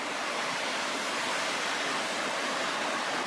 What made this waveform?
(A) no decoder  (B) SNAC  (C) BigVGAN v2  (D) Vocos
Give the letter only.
C